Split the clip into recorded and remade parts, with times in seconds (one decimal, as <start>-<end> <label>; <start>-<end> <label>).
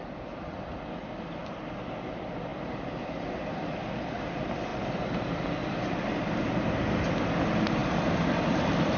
0.0-2.5 recorded; 2.5-4.0 remade; 4.0-4.7 recorded; 4.7-6.7 remade; 6.7-7.8 recorded; 7.8-9.0 remade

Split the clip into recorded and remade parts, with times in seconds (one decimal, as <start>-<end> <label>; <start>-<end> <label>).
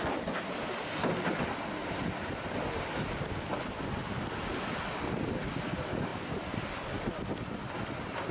0.0-8.3 recorded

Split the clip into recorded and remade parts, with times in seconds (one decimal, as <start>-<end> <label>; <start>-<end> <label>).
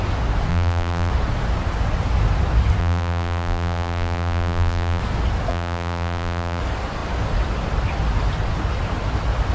0.0-0.5 recorded; 0.5-1.1 remade; 1.1-2.8 recorded; 2.8-5.0 remade; 5.0-5.5 recorded; 5.5-6.6 remade; 6.6-9.5 recorded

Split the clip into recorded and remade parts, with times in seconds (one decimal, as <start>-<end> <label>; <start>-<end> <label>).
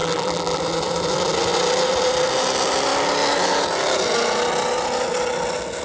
0.0-0.6 remade; 0.6-5.8 recorded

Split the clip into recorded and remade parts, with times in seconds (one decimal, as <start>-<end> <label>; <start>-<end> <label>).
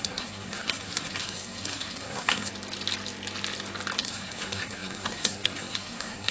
0.0-2.5 remade; 2.5-4.0 recorded; 4.0-6.3 remade